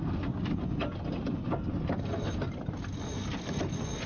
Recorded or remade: recorded